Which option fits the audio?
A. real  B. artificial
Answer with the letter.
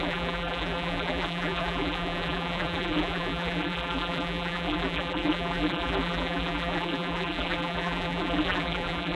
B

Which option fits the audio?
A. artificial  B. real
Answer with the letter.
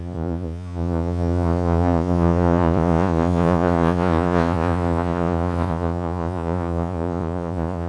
A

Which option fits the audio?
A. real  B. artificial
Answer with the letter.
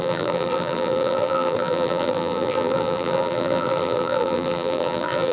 B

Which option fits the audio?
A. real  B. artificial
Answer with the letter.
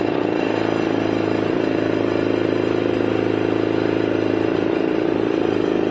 A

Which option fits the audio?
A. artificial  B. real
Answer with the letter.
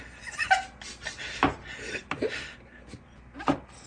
B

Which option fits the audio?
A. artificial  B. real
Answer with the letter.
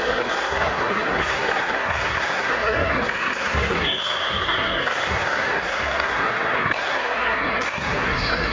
A